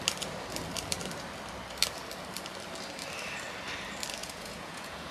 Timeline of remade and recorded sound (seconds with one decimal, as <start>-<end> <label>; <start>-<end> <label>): 0.0-4.2 recorded; 4.2-5.1 remade